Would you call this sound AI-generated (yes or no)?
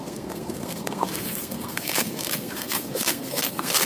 yes